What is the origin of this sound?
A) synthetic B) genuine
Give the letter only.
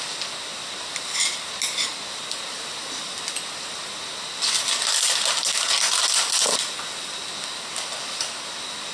B